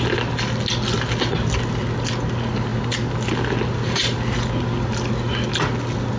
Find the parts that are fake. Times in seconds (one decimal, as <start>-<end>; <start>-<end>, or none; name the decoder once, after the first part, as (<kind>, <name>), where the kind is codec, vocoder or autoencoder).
none